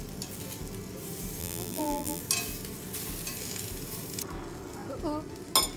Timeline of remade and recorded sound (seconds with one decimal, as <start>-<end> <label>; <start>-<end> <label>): 0.0-1.4 recorded; 1.4-2.2 remade; 2.2-5.8 recorded